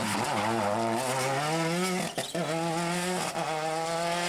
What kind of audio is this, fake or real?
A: real